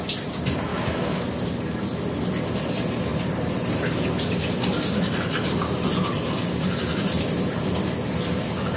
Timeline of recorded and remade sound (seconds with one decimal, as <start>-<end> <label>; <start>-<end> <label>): 0.0-0.7 recorded; 0.7-1.2 remade; 1.2-8.8 recorded